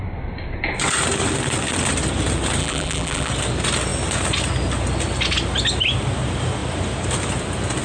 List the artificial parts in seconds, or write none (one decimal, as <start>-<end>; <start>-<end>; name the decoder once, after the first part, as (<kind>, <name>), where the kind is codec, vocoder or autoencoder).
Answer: 2.6-3.3 (vocoder, BigVGAN v2)